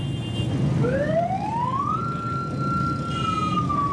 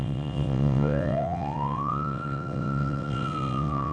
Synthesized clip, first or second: second